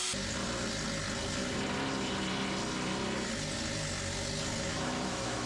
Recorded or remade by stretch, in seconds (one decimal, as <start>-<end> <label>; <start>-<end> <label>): 0.0-4.7 recorded; 4.7-5.5 remade